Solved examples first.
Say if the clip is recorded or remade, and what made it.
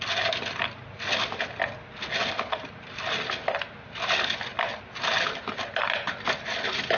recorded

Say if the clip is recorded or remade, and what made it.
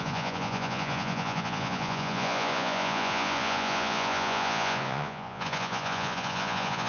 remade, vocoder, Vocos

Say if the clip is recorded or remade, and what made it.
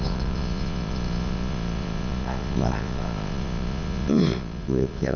remade, vocoder, Vocos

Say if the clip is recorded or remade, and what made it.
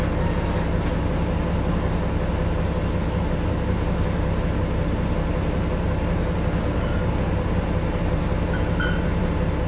recorded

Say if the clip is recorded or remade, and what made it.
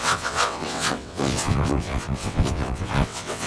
remade, vocoder, WaveNeXt